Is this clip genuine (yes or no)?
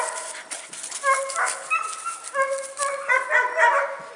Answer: yes